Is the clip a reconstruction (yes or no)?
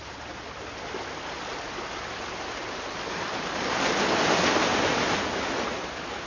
no